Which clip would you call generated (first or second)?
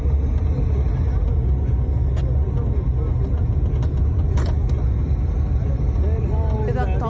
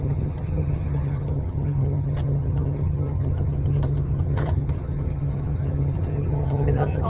second